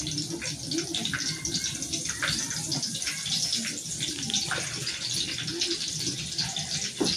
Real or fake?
real